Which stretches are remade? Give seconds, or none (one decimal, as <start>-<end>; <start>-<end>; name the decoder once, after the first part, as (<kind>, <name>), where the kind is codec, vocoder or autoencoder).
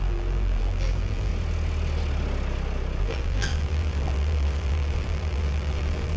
0.0-1.3 (vocoder, BigVGAN v2); 3.0-6.2